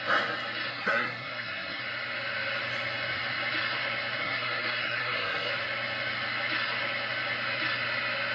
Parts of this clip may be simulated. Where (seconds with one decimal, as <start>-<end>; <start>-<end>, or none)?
0.7-1.8; 4.2-5.5

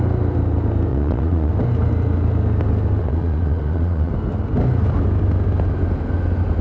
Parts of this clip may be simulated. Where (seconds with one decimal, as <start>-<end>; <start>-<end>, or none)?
0.9-1.5; 3.0-4.1